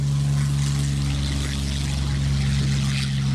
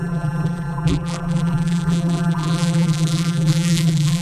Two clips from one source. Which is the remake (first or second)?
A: second